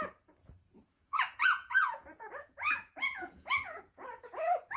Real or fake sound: fake